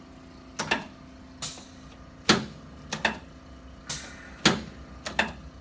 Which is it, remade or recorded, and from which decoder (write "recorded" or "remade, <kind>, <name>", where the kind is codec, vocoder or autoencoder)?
recorded